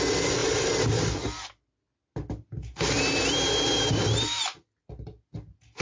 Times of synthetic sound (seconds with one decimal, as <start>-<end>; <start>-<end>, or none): none

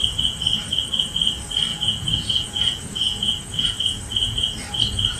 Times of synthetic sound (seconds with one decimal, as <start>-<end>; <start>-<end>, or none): 1.7-4.8

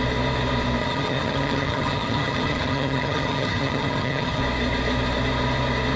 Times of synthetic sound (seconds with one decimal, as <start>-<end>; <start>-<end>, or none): 0.8-4.4

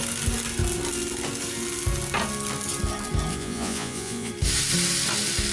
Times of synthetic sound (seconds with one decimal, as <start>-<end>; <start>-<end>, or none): 3.3-4.3

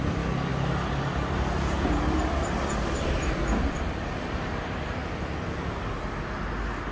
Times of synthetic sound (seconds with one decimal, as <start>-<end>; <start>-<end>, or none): none